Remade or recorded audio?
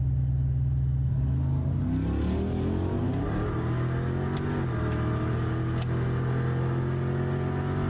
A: recorded